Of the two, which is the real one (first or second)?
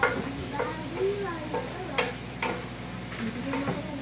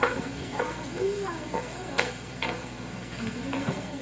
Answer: first